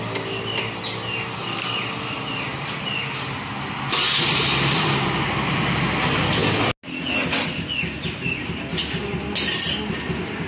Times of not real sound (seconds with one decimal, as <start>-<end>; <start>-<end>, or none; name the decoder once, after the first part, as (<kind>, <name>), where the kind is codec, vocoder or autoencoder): none